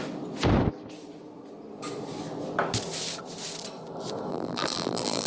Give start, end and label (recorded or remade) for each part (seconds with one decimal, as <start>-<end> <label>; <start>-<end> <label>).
0.0-4.3 recorded; 4.3-5.3 remade